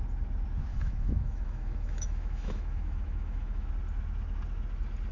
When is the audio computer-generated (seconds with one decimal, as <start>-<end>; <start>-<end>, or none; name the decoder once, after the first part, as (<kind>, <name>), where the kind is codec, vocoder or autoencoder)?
0.7-3.7 (autoencoder, DAC-VAE)